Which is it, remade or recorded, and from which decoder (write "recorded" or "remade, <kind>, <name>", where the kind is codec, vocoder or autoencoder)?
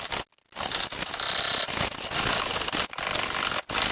recorded